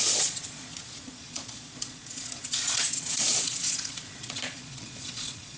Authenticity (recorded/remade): remade